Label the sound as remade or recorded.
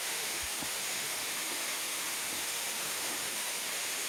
remade